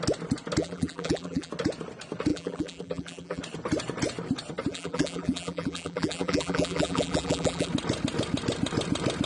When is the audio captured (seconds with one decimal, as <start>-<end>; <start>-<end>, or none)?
0.0-0.6; 1.5-2.3; 3.4-4.7; 7.7-9.3